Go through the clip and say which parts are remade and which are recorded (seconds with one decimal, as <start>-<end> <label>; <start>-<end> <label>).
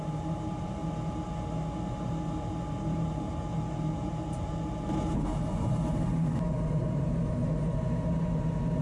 0.0-0.8 remade; 0.8-2.5 recorded; 2.5-8.8 remade